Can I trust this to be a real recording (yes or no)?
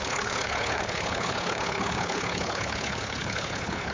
no